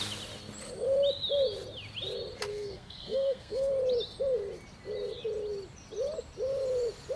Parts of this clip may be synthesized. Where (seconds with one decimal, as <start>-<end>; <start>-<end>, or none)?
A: 2.5-3.7